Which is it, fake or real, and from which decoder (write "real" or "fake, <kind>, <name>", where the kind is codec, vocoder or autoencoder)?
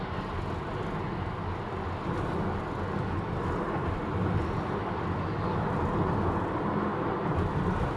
real